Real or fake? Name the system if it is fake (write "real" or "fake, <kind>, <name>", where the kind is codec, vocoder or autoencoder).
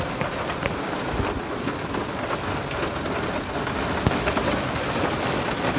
real